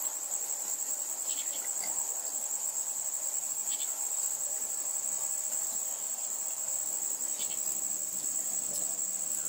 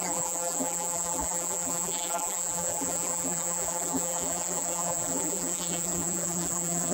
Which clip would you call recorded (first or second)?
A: first